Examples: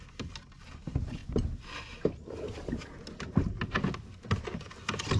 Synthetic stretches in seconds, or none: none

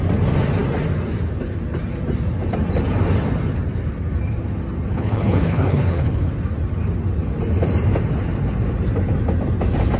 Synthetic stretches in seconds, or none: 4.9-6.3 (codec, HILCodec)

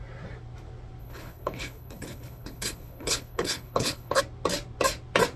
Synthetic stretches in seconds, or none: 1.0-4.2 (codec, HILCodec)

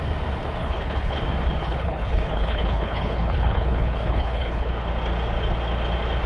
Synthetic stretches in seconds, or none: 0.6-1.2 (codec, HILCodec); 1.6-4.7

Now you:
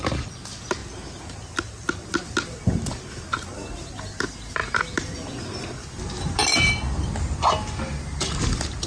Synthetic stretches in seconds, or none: none

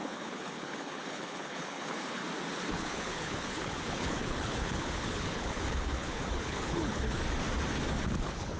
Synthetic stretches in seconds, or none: 0.0-2.2 (codec, HILCodec); 2.7-7.2; 8.0-8.6

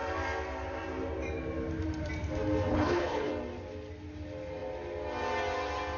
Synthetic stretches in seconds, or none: 2.7-3.3 (codec, HILCodec)